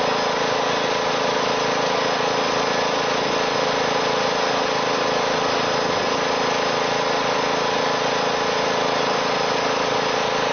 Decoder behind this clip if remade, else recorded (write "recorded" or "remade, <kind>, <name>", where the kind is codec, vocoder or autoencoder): recorded